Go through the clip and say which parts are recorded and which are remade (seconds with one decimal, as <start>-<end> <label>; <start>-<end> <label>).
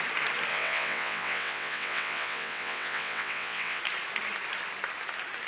0.0-0.5 recorded; 0.5-3.8 remade; 3.8-5.5 recorded